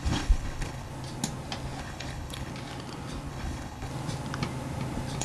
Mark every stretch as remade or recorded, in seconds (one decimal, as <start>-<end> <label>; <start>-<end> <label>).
0.0-0.9 remade; 0.9-1.8 recorded; 1.8-2.5 remade; 2.5-3.3 recorded; 3.3-3.9 remade; 3.9-5.2 recorded